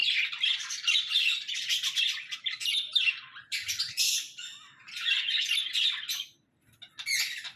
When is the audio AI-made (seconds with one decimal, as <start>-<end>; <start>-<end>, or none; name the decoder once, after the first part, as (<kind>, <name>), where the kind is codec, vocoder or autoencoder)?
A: 0.0-2.0 (vocoder, BigVGAN v2); 2.7-3.8